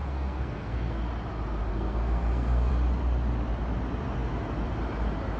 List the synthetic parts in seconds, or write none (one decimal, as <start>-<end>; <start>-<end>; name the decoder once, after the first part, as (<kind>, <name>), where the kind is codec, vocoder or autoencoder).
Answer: 0.0-1.0 (codec, SNAC); 1.7-2.7